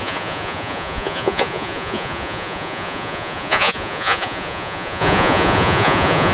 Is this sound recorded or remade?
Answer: remade